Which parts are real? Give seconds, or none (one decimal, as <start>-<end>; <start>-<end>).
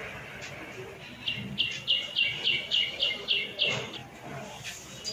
0.0-5.1